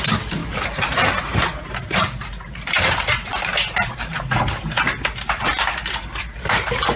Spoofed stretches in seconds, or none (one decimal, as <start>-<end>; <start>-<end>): 1.3-5.5